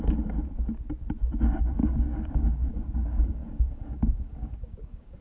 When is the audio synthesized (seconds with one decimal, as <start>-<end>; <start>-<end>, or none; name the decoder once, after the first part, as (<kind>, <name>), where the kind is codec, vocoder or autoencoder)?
1.8-5.2 (codec, DAC)